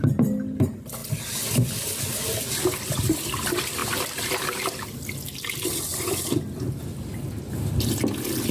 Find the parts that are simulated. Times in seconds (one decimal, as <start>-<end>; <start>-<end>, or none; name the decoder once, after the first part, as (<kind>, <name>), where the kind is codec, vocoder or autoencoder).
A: none